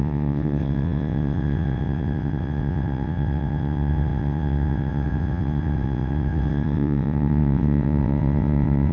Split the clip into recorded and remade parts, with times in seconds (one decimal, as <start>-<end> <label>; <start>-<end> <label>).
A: 0.0-8.9 remade